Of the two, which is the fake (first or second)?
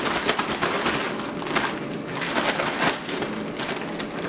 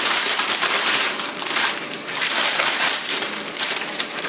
second